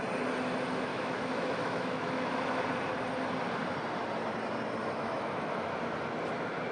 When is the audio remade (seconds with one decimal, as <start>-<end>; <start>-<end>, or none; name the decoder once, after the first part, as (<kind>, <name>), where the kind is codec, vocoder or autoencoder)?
0.9-2.6 (autoencoder, DAC-VAE); 4.8-5.7